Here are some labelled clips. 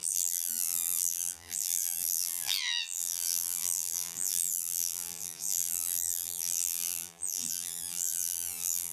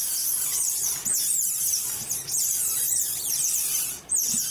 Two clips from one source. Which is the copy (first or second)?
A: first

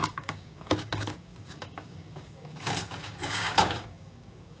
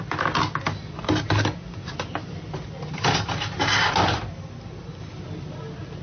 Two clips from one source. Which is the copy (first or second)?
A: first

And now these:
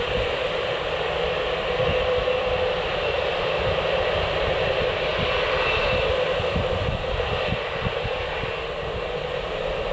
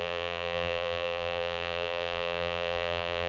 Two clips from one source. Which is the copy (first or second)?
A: second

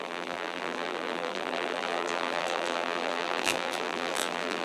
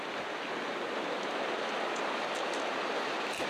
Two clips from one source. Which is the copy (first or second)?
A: first